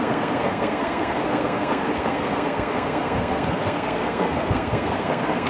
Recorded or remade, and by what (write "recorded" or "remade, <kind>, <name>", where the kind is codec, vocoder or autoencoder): remade, codec, SNAC